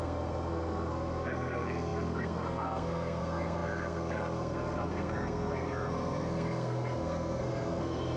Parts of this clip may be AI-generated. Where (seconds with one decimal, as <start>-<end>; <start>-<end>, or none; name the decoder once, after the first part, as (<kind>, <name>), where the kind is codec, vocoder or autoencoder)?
0.0-8.2 (codec, SNAC)